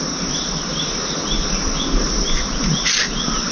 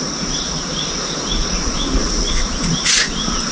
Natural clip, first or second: first